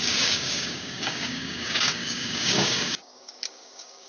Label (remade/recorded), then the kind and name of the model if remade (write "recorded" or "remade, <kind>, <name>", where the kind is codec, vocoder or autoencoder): remade, codec, DAC